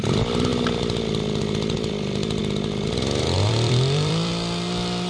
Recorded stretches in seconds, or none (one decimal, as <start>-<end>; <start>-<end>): 0.5-1.4; 2.4-3.5; 4.3-5.1